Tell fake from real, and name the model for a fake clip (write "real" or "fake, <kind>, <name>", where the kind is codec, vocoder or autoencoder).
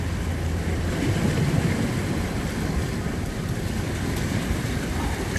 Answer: real